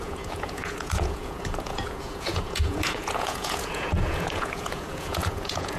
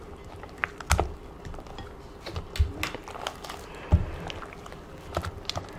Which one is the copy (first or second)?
first